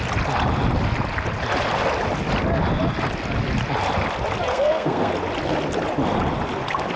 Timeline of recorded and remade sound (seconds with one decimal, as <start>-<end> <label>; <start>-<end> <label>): 0.0-4.5 recorded; 4.5-5.1 remade; 5.1-7.0 recorded